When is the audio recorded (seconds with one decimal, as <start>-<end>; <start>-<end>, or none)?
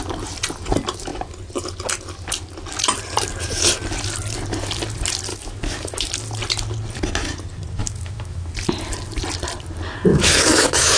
0.0-5.3; 6.1-7.8; 8.5-10.1